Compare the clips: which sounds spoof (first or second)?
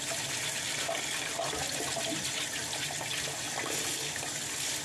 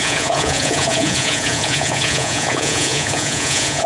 second